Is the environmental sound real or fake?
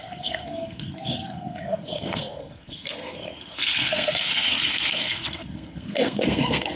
fake